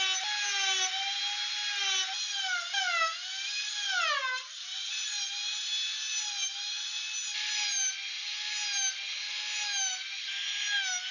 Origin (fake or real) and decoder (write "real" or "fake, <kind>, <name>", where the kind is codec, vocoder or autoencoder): real